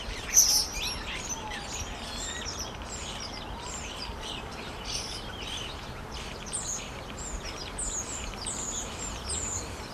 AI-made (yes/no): yes